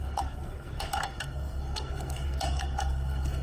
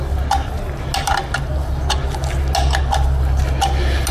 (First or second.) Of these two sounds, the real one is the second